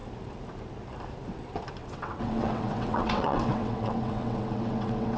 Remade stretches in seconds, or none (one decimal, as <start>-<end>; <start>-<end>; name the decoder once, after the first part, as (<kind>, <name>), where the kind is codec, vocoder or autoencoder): 1.8-5.2 (vocoder, WaveNeXt)